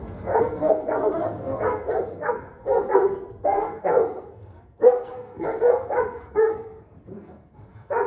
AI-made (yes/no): yes